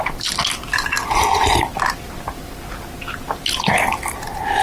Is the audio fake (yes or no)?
no